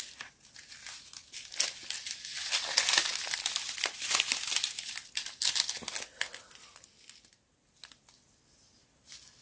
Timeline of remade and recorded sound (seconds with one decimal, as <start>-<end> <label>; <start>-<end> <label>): 0.0-9.4 recorded